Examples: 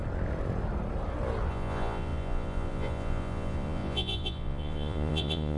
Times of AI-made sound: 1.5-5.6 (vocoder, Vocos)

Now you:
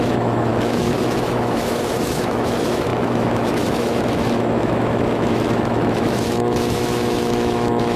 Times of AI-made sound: 0.0-8.0 (autoencoder, DAC-VAE)

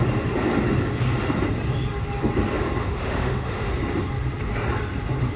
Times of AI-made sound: 2.8-3.7 (autoencoder, DAC-VAE)

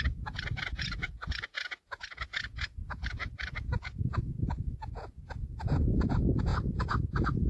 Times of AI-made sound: 0.0-7.5 (vocoder, Vocos)

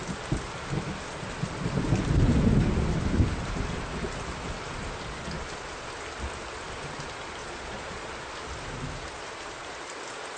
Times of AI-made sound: 7.4-8.1 (vocoder, Vocos)

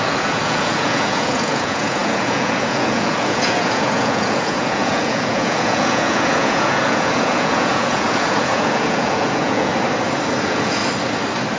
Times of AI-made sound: 0.0-9.7 (vocoder, Vocos); 10.4-10.8